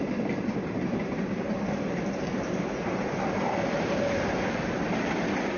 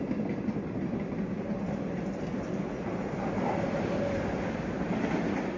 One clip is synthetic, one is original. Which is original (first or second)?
second